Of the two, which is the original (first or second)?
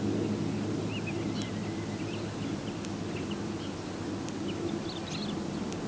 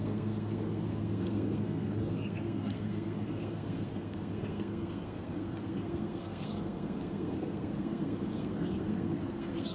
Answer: first